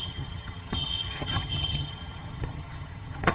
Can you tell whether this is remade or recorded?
remade